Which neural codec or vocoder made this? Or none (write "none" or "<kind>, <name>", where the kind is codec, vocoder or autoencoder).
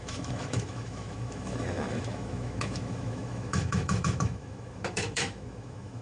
autoencoder, DAC-VAE